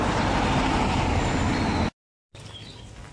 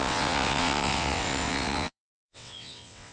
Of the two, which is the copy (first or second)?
second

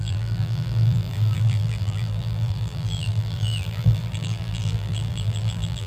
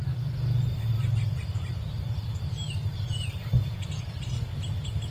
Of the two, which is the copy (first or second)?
first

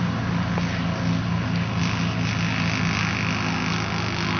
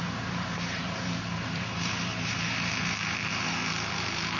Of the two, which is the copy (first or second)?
second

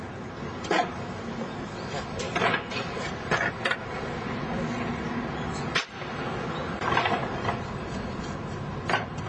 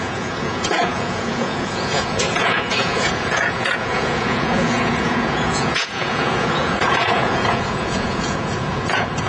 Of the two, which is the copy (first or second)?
second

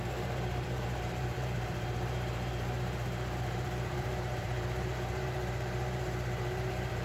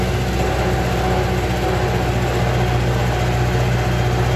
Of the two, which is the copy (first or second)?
first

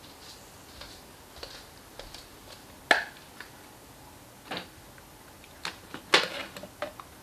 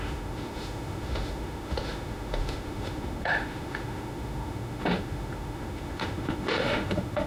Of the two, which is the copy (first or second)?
second